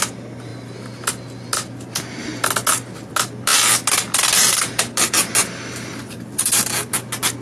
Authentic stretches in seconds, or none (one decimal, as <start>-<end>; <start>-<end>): 0.0-7.4

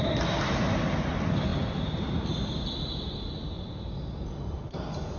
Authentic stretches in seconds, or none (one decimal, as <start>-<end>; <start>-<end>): 0.0-5.2

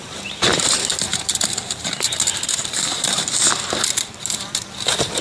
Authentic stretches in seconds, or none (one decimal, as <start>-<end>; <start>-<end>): 3.2-4.0

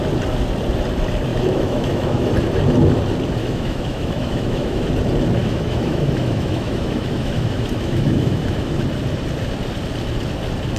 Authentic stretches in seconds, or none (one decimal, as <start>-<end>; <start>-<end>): 0.0-1.3; 2.3-3.4; 4.9-5.4; 8.8-10.8